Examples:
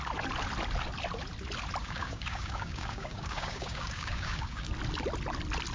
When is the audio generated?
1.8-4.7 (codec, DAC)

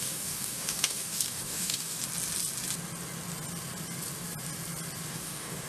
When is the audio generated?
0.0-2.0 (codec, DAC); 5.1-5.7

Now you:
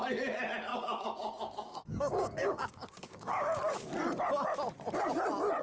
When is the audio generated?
0.7-3.6 (codec, DAC)

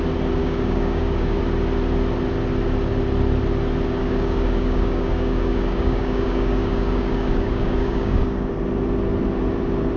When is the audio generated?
0.4-1.4 (codec, DAC); 4.0-8.5

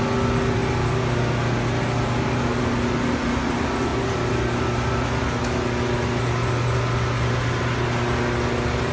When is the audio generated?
none